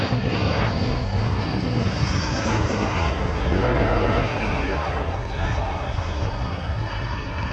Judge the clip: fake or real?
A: fake